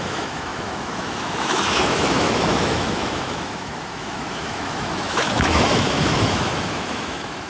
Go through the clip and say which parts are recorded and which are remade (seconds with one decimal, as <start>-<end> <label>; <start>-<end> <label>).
0.0-7.5 remade